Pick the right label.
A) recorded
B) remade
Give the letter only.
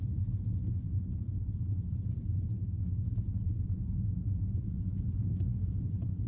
B